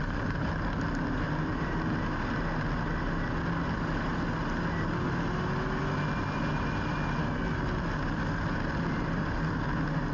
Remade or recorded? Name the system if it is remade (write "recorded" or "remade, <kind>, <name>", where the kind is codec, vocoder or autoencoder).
recorded